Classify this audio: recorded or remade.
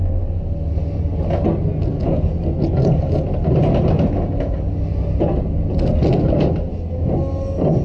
recorded